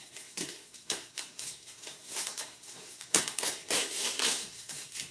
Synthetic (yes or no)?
yes